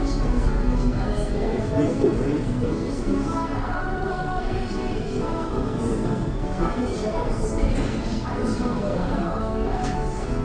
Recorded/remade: remade